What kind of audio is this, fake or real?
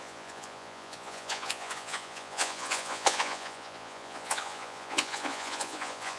fake